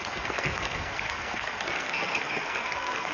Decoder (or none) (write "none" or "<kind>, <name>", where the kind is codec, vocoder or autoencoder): codec, SNAC